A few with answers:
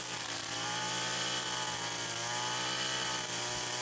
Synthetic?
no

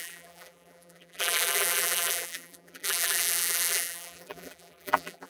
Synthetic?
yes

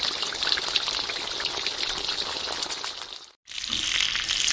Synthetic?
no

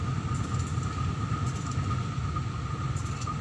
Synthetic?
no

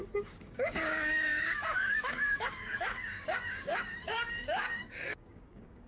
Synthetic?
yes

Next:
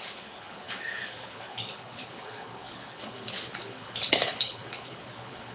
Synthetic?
yes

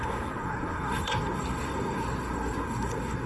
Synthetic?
yes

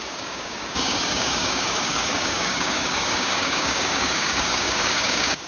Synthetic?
yes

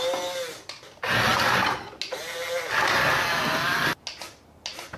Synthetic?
no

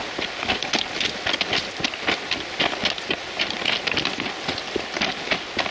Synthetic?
no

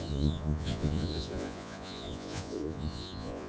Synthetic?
yes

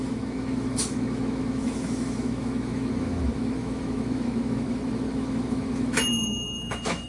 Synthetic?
yes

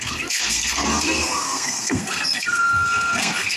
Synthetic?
yes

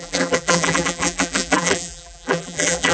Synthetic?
yes